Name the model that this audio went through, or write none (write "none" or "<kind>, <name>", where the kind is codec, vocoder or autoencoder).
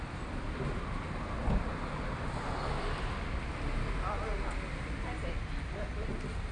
none